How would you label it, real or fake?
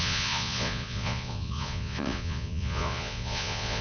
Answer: fake